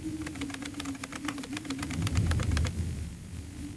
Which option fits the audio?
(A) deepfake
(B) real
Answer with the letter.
A